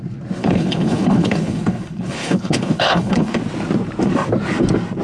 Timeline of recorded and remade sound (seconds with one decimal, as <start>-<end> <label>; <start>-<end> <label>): 0.0-0.4 recorded; 0.4-3.4 remade; 3.4-5.0 recorded